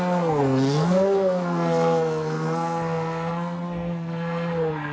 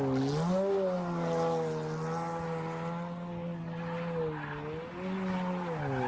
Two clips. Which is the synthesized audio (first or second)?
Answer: first